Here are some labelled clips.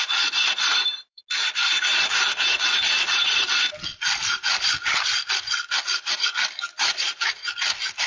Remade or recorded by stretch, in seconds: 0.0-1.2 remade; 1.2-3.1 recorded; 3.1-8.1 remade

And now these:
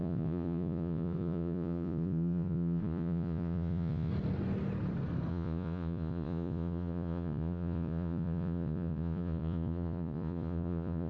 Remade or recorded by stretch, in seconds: 0.0-4.1 remade; 4.1-5.3 recorded; 5.3-11.1 remade

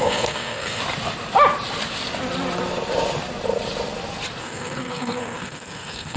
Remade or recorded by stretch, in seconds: 0.0-0.8 remade; 0.8-4.4 recorded; 4.4-6.2 remade

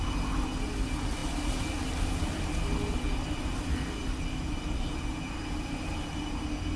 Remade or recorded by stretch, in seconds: 0.0-6.8 recorded

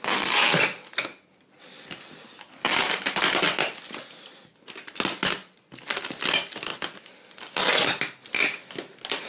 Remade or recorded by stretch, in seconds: 0.0-9.3 recorded

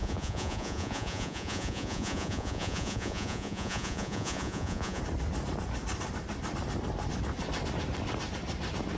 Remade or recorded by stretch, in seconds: 0.0-5.0 remade; 5.0-9.0 recorded

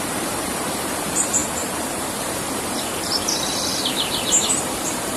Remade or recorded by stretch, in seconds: 0.0-5.2 remade